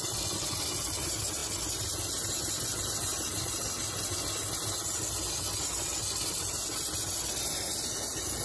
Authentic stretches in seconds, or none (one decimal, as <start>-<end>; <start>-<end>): 0.0-8.4